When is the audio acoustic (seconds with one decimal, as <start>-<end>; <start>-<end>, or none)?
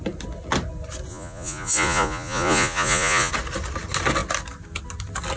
0.0-1.1; 3.3-5.4